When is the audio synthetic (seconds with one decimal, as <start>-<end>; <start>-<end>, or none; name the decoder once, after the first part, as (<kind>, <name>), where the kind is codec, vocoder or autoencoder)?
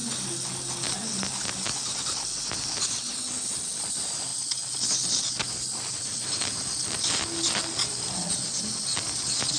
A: none